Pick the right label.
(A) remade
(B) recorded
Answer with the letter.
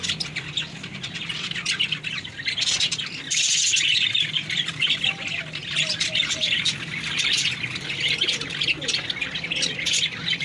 B